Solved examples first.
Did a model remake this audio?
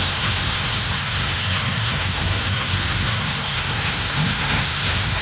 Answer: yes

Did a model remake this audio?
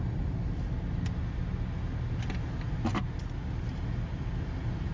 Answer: no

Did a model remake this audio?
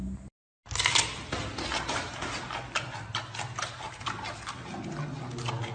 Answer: no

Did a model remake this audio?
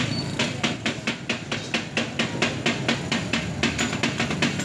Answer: no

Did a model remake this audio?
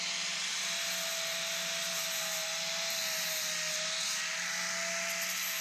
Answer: no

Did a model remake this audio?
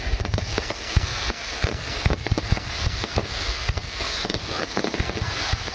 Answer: yes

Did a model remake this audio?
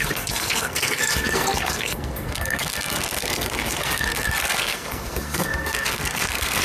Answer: yes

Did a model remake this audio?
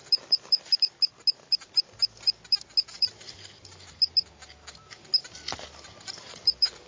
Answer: no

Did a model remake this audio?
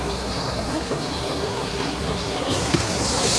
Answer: yes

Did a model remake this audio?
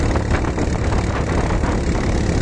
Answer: no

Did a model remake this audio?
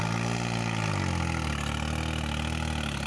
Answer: no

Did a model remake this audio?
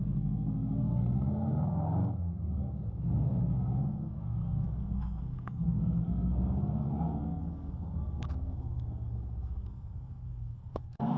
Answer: yes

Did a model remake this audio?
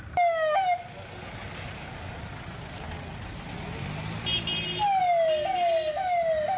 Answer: no